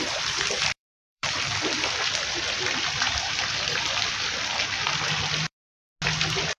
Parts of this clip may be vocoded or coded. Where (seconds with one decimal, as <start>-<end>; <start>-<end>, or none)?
0.0-5.9